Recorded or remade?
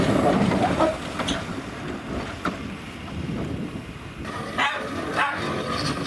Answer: remade